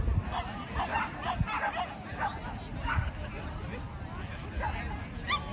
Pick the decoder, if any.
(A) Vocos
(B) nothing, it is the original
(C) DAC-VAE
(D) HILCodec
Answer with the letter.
B